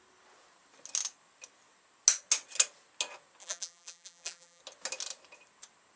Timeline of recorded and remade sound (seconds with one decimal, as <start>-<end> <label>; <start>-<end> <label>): 0.0-3.4 recorded; 3.4-4.6 remade; 4.6-6.0 recorded